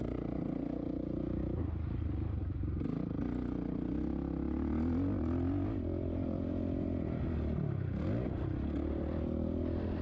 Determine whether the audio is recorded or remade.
recorded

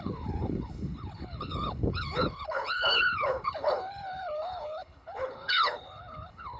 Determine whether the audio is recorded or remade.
remade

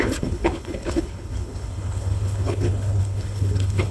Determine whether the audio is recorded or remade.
remade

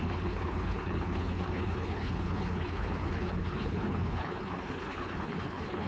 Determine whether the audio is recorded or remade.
remade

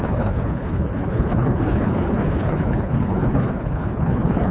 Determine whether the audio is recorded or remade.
remade